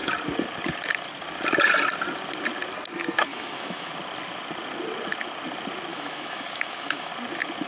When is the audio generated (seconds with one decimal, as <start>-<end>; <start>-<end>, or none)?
3.3-3.9; 5.9-7.1